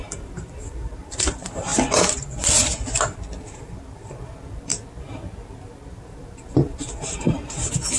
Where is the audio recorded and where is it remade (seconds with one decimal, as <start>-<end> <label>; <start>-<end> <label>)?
0.0-1.7 remade; 1.7-3.4 recorded; 3.4-4.7 remade; 4.7-5.9 recorded; 5.9-8.0 remade